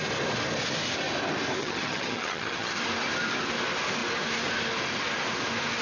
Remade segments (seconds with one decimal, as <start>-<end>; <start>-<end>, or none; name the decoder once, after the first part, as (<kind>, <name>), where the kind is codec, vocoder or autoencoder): 1.6-2.8 (vocoder, HiFi-GAN)